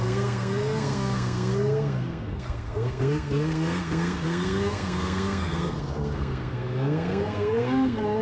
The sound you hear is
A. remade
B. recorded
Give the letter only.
A